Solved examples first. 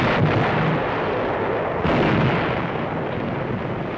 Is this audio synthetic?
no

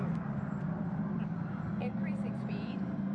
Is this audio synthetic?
yes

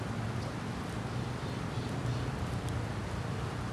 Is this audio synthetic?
yes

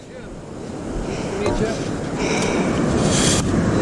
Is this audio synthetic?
no